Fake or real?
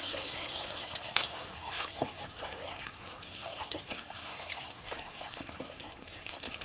fake